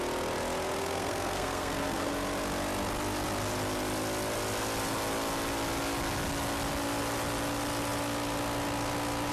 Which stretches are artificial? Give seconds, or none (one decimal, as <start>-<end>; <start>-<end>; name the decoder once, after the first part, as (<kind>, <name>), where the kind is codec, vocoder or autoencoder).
0.8-2.1 (codec, SNAC)